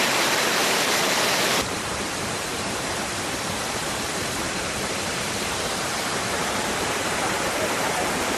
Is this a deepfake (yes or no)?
yes